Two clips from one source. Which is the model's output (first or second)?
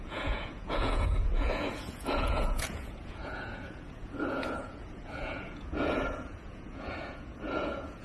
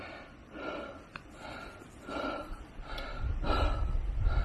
first